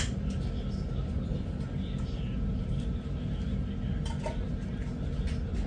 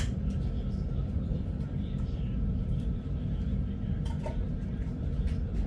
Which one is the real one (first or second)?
first